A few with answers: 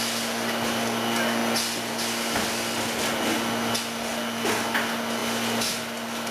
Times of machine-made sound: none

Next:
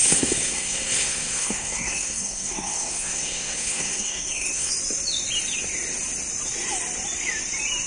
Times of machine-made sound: 0.0-4.7 (codec, SNAC)

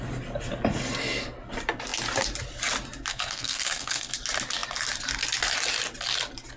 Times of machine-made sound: 3.1-4.1 (codec, SNAC)

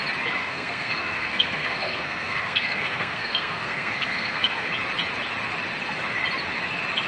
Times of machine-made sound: 0.4-4.7 (codec, SNAC)

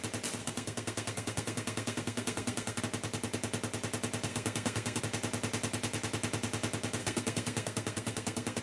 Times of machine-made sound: 0.4-2.8 (codec, SNAC); 4.3-5.0; 7.0-8.6

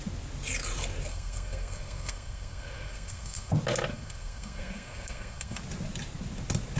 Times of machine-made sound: 1.1-3.5 (codec, SNAC); 3.9-5.6

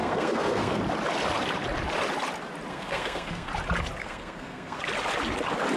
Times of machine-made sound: 0.0-0.8 (codec, SNAC); 2.7-3.5; 4.0-4.8

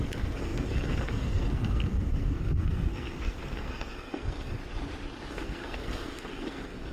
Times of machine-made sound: 0.0-4.6 (codec, SNAC); 5.3-6.9